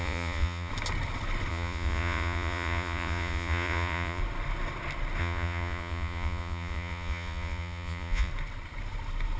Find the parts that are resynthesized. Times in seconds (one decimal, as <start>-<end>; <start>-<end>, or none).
0.0-0.7; 1.5-4.2; 5.2-8.3